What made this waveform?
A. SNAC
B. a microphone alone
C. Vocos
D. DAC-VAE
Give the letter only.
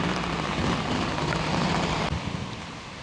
B